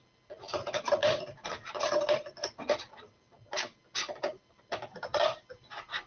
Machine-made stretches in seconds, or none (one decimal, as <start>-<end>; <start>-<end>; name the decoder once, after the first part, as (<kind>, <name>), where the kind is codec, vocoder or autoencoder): none